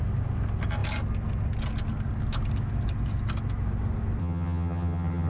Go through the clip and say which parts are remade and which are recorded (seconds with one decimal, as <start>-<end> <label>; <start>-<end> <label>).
0.0-4.2 recorded; 4.2-5.3 remade